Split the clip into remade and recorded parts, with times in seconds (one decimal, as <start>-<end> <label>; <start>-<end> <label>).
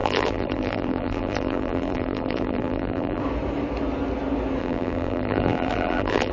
0.0-3.2 remade; 3.2-4.6 recorded; 4.6-6.3 remade